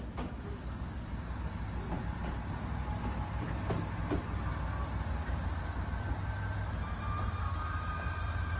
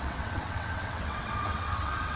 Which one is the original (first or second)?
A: first